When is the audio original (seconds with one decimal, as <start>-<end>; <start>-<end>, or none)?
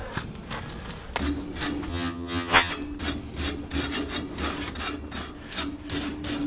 0.0-1.9; 2.7-6.5